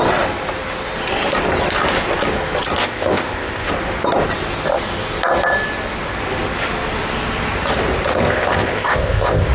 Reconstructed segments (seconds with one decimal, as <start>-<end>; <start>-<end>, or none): 2.8-3.7; 8.1-9.5